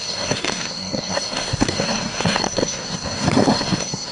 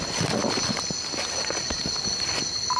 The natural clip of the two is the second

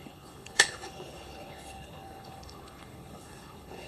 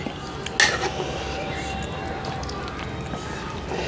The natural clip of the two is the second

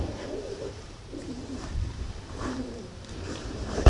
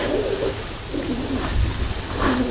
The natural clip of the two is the second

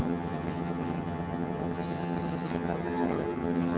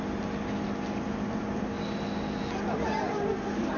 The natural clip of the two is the second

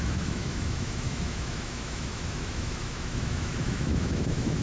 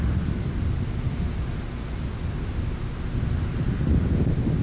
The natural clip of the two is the second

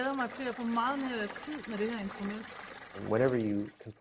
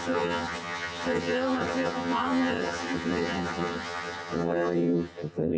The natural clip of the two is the first